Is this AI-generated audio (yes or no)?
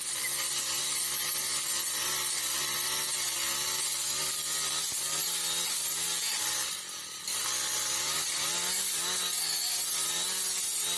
no